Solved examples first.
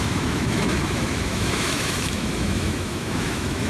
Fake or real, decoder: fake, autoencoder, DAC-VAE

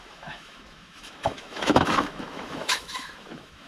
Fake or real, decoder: fake, autoencoder, DAC-VAE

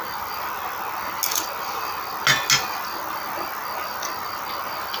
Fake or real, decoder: real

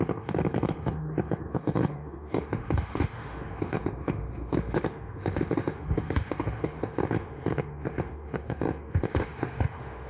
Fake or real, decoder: fake, autoencoder, DAC-VAE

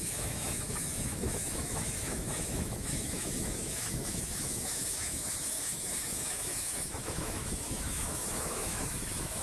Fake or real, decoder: fake, autoencoder, DAC-VAE